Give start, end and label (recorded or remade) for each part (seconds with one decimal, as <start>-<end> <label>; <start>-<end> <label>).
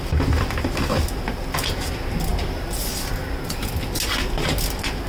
0.0-5.1 recorded